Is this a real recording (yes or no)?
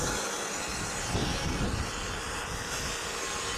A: yes